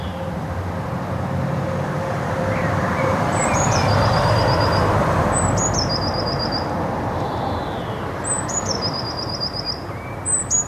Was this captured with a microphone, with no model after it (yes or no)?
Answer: no